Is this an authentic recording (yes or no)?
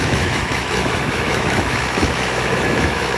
no